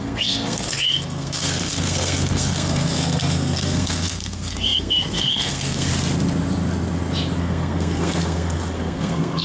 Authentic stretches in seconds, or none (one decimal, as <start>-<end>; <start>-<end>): 5.9-7.4